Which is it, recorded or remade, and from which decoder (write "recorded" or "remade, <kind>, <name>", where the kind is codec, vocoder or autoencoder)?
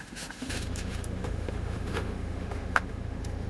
remade, autoencoder, DAC-VAE